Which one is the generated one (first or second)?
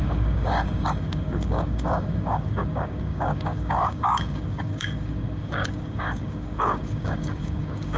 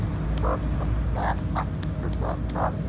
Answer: first